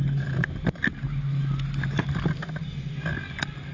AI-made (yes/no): no